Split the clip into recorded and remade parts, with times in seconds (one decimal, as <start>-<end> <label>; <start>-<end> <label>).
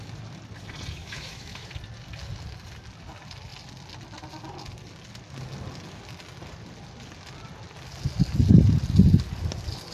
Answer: 0.0-1.0 recorded; 1.0-1.7 remade; 1.7-9.9 recorded